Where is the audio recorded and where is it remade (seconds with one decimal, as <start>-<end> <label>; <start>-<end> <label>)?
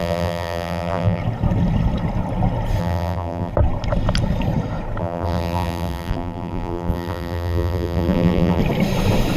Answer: 0.0-1.2 remade; 1.2-2.8 recorded; 2.8-3.5 remade; 3.5-5.0 recorded; 5.0-8.6 remade; 8.6-9.4 recorded